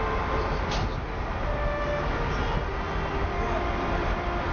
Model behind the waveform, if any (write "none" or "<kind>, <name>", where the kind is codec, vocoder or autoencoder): none